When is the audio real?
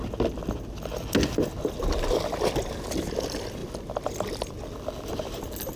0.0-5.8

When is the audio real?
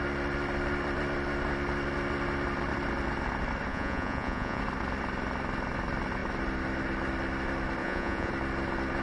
0.0-3.7; 4.6-7.8; 8.3-9.0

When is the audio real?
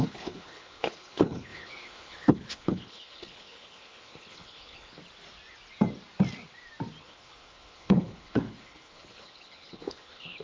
5.0-7.0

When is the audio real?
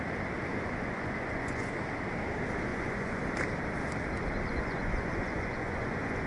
0.0-0.5; 1.7-2.7; 3.2-4.5